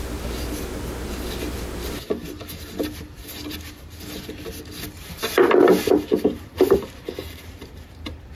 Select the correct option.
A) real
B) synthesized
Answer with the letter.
A